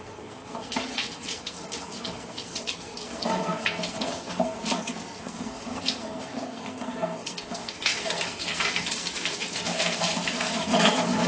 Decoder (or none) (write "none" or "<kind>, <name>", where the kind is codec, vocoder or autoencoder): codec, SNAC